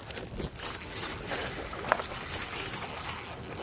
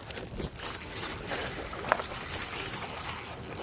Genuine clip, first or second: first